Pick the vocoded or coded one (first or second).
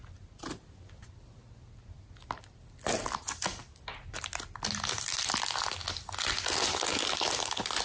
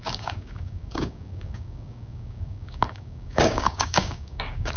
second